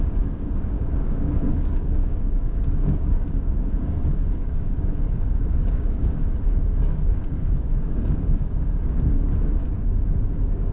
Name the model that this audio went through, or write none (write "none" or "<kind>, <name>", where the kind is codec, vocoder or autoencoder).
codec, DAC